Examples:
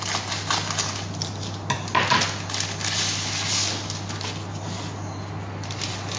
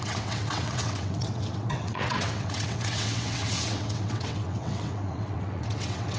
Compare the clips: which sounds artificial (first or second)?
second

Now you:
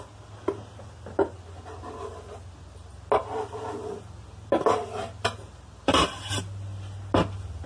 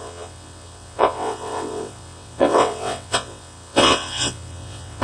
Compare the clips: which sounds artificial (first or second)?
second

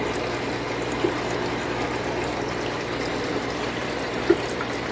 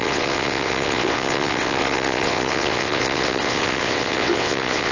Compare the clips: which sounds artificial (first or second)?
second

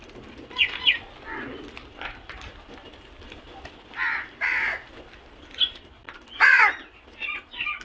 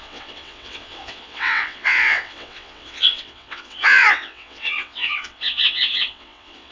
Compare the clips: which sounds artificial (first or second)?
second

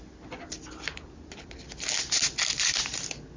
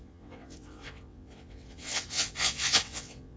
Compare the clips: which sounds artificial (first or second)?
second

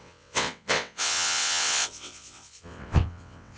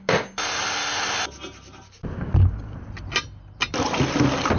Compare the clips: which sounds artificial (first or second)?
first